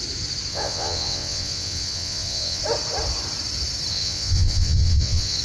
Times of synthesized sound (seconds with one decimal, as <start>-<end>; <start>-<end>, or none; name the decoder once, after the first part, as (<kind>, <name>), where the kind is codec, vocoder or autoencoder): 0.5-2.6 (vocoder, WaveNeXt); 3.9-5.4